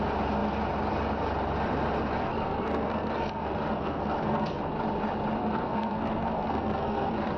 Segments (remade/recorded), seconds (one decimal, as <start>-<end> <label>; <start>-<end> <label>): 0.0-2.2 recorded; 2.2-4.6 remade; 4.6-5.4 recorded; 5.4-7.4 remade